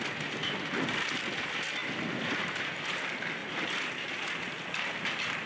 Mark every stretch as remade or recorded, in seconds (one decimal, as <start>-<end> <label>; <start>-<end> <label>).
0.0-0.4 recorded; 0.4-1.2 remade; 1.2-3.4 recorded; 3.4-5.0 remade; 5.0-5.5 recorded